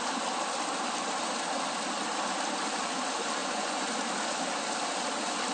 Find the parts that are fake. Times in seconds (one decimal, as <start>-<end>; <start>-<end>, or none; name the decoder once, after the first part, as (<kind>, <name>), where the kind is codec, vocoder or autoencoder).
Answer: 3.4-3.9 (vocoder, Vocos)